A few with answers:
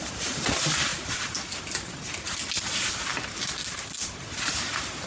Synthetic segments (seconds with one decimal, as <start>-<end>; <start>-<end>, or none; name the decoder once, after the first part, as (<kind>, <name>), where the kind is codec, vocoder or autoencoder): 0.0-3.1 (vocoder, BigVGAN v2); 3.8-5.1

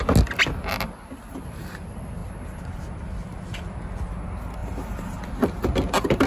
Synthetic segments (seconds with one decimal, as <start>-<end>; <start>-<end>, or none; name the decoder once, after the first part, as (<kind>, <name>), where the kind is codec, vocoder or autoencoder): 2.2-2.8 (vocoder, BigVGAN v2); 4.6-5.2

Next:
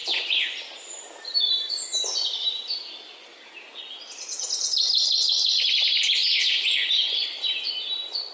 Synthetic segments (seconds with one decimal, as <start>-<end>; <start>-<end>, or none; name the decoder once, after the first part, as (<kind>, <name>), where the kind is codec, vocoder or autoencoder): 6.2-7.7 (vocoder, BigVGAN v2)

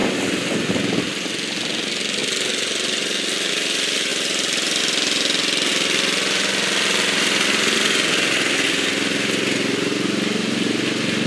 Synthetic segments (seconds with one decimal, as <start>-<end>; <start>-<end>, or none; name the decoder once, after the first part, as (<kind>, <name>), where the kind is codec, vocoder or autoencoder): 5.7-7.8 (vocoder, BigVGAN v2)